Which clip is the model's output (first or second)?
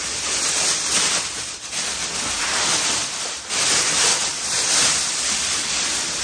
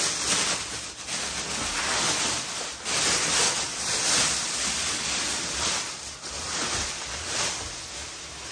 first